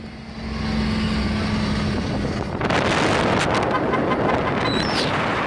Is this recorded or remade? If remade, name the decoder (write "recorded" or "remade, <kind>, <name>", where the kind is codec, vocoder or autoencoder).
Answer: recorded